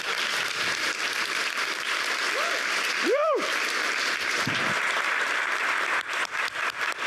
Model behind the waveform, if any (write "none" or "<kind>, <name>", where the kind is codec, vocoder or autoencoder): vocoder, BigVGAN v2